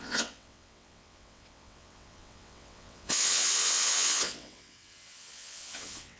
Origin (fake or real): fake